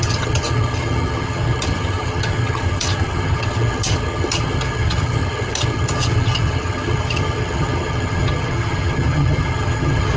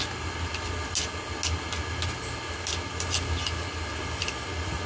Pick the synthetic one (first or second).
first